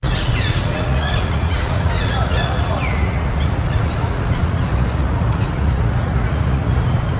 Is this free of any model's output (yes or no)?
no